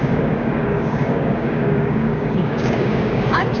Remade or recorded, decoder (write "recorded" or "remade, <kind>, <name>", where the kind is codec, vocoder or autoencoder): remade, codec, DAC